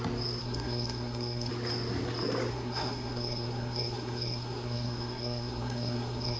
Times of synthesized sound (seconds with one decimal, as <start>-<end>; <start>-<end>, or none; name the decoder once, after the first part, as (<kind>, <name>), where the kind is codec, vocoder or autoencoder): 0.4-1.5 (codec, SNAC); 2.5-6.4